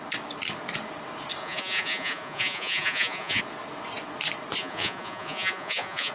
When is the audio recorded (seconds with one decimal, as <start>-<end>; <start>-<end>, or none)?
0.0-1.4; 3.4-4.6